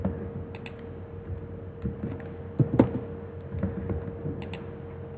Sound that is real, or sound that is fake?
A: real